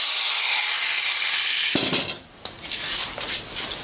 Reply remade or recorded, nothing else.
recorded